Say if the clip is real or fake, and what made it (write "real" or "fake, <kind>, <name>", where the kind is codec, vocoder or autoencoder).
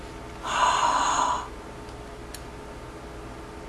real